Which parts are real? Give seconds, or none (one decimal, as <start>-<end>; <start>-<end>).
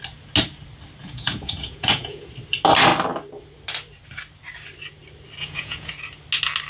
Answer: 0.0-1.0; 2.3-5.4; 5.9-6.7